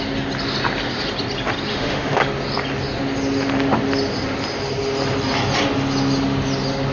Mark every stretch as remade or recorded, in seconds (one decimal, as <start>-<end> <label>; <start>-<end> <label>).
0.0-1.7 recorded; 1.7-2.2 remade; 2.2-6.9 recorded